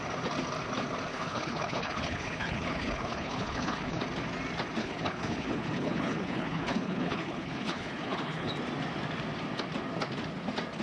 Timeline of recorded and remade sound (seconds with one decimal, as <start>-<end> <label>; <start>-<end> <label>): 0.0-1.1 recorded; 1.1-4.0 remade; 4.0-4.8 recorded; 4.8-8.5 remade; 8.5-10.8 recorded

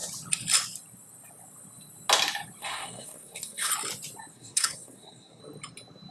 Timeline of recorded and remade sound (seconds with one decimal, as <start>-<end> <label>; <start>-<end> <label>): 0.0-2.6 recorded; 2.6-3.7 remade; 3.7-4.3 recorded; 4.3-5.4 remade; 5.4-6.1 recorded

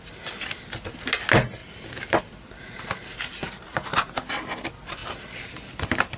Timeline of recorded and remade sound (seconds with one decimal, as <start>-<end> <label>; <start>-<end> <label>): 0.0-1.6 recorded; 1.6-2.2 remade; 2.2-5.0 recorded; 5.0-6.2 remade

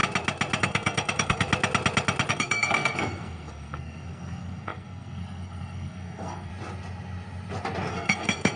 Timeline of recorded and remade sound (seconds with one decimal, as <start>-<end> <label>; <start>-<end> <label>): 0.0-0.6 recorded; 0.6-1.5 remade; 1.5-2.3 recorded; 2.3-6.5 remade; 6.5-7.9 recorded; 7.9-8.6 remade